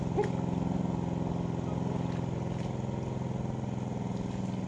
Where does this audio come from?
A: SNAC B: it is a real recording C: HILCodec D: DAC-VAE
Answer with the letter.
B